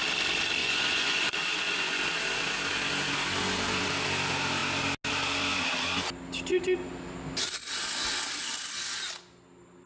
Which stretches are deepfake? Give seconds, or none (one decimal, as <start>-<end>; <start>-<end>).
0.6-2.0